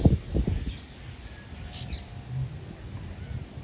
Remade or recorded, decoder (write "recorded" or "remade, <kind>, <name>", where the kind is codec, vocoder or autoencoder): recorded